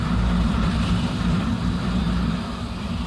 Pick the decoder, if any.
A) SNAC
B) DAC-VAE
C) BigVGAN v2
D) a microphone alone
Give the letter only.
C